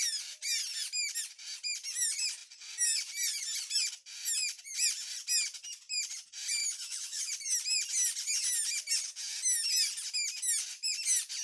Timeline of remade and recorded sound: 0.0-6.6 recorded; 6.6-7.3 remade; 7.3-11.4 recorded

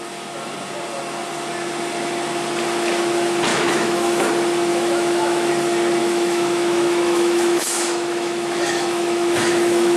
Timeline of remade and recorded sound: 0.0-3.5 recorded; 3.5-4.3 remade; 4.3-4.7 recorded; 4.7-5.5 remade; 5.5-6.0 recorded; 6.0-10.0 remade

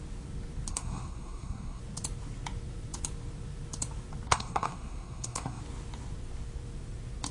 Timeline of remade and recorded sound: 0.0-0.7 recorded; 0.7-1.8 remade; 1.8-4.3 recorded; 4.3-5.6 remade; 5.6-7.3 recorded

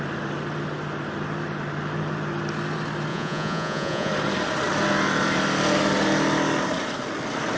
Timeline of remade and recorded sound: 0.0-3.1 recorded; 3.1-4.1 remade; 4.1-7.6 recorded

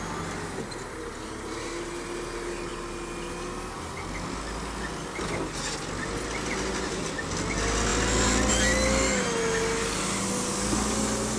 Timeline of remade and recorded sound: 0.0-11.4 recorded

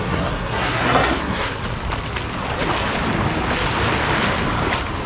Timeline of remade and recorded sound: 0.0-1.6 remade; 1.6-5.1 recorded